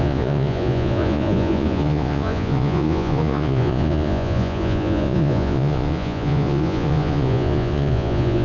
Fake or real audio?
fake